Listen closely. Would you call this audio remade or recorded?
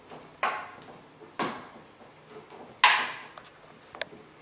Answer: recorded